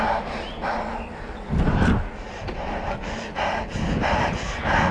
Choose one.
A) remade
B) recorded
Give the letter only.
B